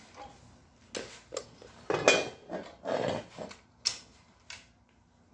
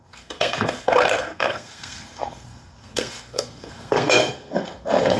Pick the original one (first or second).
first